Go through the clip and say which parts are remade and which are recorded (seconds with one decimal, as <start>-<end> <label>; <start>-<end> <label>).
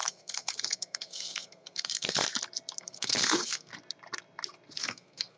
0.0-2.2 remade; 2.2-2.8 recorded; 2.8-3.7 remade; 3.7-4.8 recorded; 4.8-5.4 remade